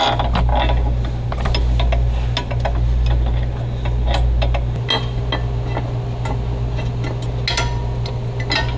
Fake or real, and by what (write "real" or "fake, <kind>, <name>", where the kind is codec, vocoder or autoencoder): real